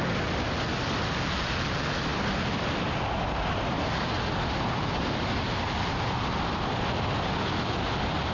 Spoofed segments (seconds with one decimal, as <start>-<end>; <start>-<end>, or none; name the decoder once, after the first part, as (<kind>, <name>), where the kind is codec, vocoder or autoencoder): none